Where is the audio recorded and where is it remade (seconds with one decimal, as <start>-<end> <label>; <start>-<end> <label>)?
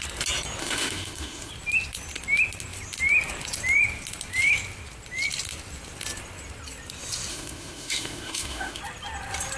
0.0-0.6 recorded; 0.6-1.5 remade; 1.5-7.3 recorded; 7.3-8.8 remade; 8.8-9.6 recorded